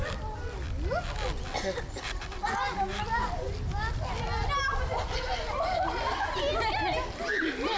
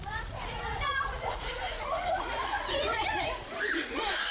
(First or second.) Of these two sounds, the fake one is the second